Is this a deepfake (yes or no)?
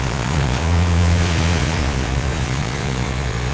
yes